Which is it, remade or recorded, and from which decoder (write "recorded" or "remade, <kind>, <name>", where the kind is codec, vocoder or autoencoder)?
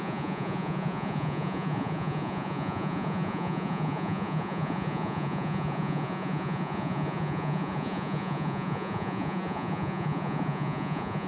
remade, vocoder, Vocos